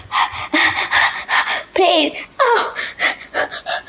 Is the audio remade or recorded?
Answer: remade